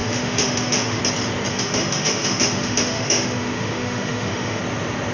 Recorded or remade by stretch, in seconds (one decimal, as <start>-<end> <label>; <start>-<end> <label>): 0.0-1.0 remade; 1.0-1.5 recorded; 1.5-4.6 remade; 4.6-5.1 recorded